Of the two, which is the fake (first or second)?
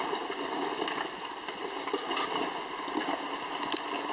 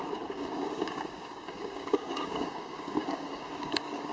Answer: second